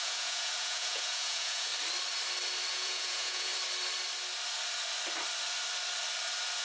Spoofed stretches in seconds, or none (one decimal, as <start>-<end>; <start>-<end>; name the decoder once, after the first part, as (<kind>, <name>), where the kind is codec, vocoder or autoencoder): 0.0-1.7 (vocoder, Vocos); 2.7-3.5